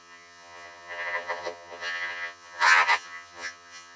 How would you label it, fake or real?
fake